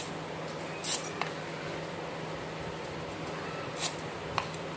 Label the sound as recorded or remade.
recorded